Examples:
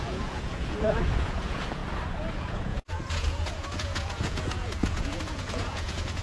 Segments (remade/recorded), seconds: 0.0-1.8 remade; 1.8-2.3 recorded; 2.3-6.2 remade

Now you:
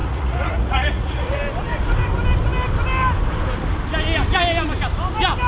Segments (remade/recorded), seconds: 0.0-1.4 remade; 1.4-5.5 recorded

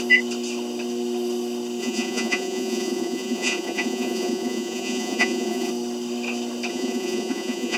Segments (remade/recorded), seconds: 0.0-1.8 recorded; 1.8-5.7 remade; 5.7-6.7 recorded; 6.7-7.8 remade

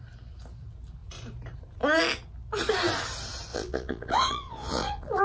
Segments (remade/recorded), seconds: 0.0-3.5 recorded; 3.5-5.2 remade